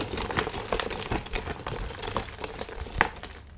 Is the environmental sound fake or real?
real